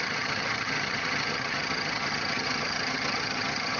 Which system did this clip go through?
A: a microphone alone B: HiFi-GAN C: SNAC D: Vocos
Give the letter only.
B